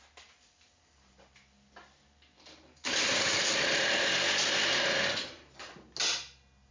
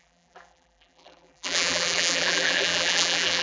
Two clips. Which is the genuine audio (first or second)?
first